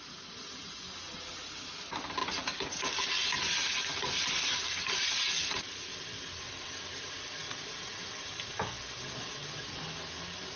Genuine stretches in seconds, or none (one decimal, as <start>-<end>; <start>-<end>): 0.0-10.6